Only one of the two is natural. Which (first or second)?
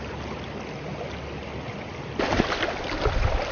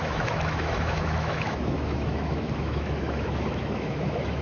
first